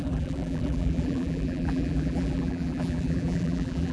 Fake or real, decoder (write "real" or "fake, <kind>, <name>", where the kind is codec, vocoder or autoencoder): fake, vocoder, BigVGAN v2